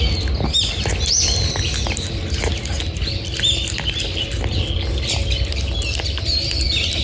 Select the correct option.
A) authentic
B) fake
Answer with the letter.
A